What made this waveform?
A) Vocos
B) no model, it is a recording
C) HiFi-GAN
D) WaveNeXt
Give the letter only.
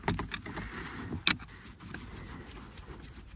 B